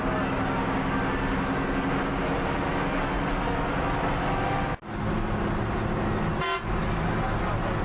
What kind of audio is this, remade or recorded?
recorded